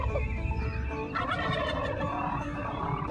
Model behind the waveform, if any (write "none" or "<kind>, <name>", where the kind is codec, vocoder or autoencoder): vocoder, BigVGAN v2